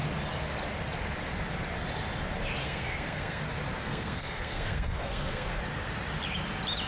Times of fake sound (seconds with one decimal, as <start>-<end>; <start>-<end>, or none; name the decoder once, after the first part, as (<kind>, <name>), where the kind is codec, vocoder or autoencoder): 2.6-3.4 (codec, SNAC); 3.8-5.6